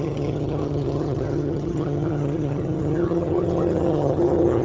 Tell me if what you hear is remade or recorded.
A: remade